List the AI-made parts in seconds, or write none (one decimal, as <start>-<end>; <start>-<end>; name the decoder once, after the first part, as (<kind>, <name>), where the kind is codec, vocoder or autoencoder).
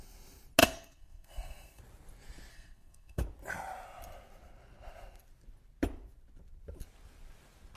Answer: 0.6-1.8 (codec, SNAC); 2.5-3.2